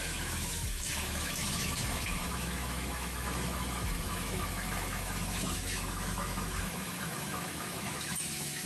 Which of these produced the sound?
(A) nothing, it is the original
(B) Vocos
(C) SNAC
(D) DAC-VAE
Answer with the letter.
D